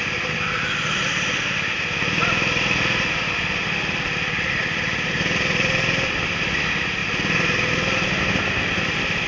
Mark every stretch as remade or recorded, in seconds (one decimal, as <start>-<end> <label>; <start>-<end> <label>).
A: 0.0-7.0 remade; 7.0-8.3 recorded; 8.3-9.3 remade